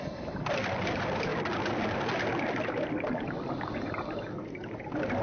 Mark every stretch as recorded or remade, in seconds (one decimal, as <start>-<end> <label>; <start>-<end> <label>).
0.0-5.2 recorded